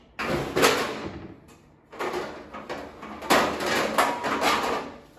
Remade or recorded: recorded